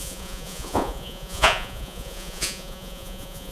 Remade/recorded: remade